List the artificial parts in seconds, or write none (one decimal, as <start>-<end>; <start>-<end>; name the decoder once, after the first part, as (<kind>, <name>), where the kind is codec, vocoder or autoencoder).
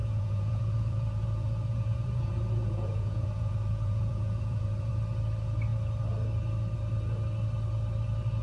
0.0-4.9 (vocoder, Vocos)